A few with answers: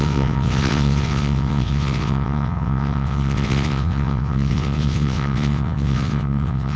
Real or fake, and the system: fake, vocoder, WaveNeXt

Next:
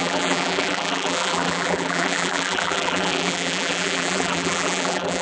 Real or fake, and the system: fake, vocoder, BigVGAN v2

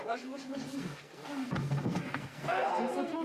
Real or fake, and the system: fake, codec, SNAC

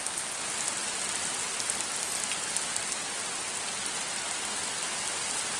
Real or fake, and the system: real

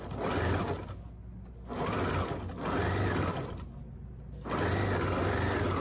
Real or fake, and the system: real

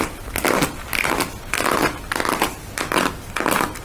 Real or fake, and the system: real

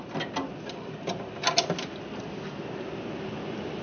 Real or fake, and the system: real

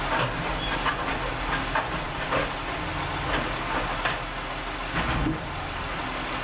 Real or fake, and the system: real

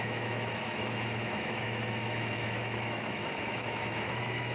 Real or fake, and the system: fake, autoencoder, DAC-VAE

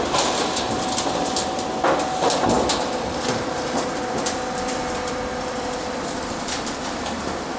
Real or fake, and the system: fake, vocoder, BigVGAN v2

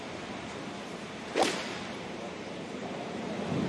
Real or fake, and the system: fake, vocoder, BigVGAN v2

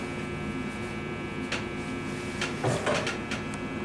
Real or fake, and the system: real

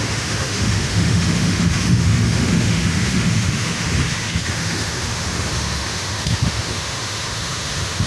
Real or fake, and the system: fake, autoencoder, DAC-VAE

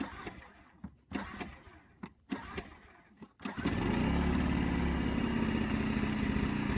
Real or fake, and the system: real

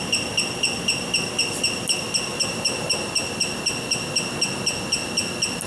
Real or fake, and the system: real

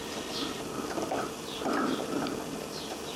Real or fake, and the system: real